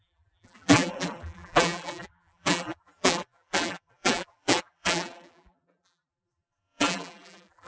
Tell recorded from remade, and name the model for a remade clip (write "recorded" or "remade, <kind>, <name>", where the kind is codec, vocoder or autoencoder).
remade, vocoder, BigVGAN v2